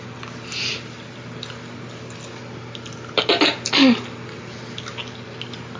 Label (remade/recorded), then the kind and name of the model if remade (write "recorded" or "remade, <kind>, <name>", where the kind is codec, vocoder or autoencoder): recorded